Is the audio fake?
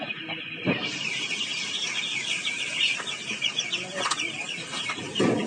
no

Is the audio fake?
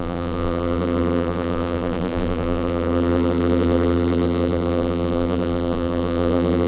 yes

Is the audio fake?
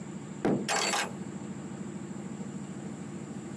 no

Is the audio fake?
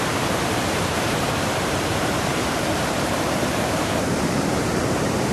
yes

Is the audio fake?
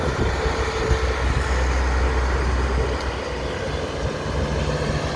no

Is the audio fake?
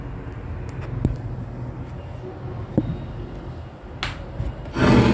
no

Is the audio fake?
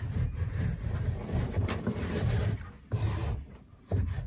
yes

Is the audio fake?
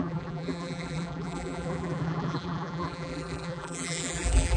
yes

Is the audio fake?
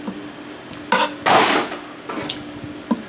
no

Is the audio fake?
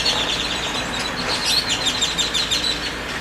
no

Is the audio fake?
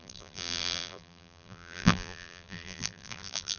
yes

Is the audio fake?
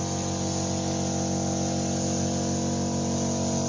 no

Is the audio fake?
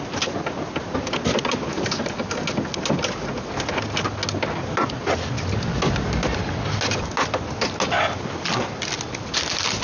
no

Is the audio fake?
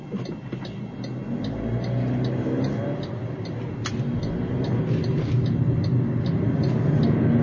no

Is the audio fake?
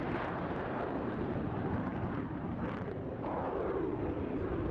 yes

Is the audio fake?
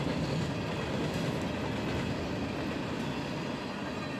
no